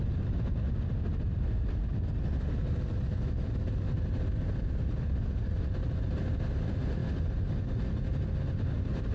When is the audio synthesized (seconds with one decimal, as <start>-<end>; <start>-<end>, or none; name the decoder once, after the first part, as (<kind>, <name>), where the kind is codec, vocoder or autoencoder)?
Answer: 7.0-7.7 (vocoder, BigVGAN v2)